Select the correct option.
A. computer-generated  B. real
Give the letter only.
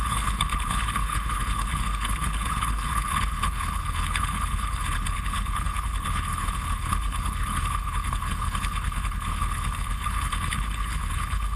A